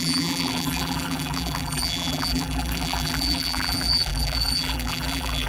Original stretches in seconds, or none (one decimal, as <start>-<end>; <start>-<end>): none